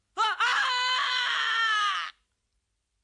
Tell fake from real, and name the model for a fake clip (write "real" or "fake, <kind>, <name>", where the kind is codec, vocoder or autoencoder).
fake, vocoder, BigVGAN v2